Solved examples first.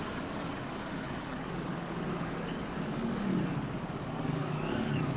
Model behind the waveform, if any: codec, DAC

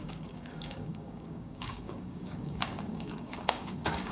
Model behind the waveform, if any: codec, DAC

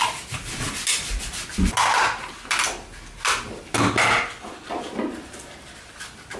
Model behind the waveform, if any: none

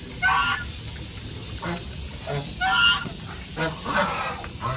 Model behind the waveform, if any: none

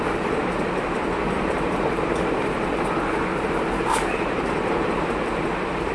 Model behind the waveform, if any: none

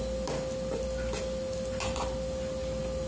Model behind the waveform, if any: none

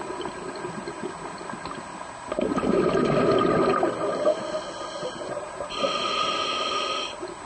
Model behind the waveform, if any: none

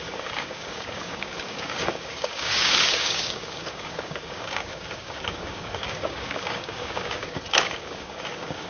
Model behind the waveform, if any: codec, DAC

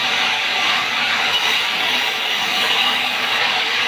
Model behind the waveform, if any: codec, DAC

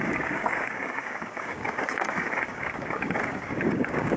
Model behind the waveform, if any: codec, DAC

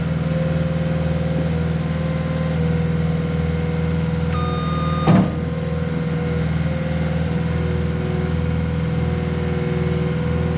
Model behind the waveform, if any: none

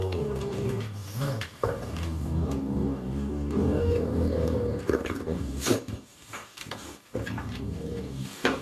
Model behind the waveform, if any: codec, DAC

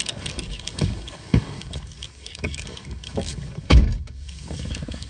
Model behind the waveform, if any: codec, DAC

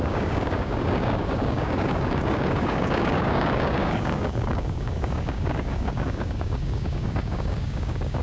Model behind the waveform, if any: codec, DAC